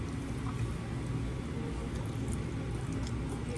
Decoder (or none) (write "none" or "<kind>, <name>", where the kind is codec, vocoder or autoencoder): none